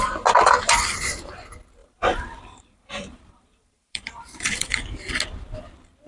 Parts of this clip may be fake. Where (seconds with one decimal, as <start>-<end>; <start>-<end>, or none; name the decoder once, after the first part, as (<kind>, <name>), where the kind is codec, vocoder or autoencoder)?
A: 1.8-5.1 (vocoder, BigVGAN v2)